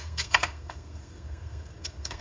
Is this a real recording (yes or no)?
no